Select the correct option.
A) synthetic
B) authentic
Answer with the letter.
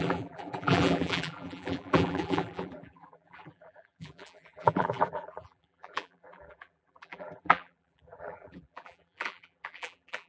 A